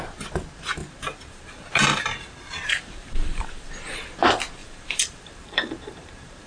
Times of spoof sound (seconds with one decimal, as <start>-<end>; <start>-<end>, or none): 0.8-3.7; 4.6-6.5